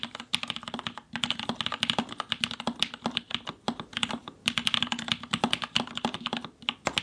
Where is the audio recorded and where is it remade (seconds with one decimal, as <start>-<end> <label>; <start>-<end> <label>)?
0.0-7.0 recorded